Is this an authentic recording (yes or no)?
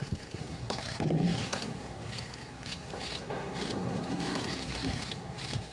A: no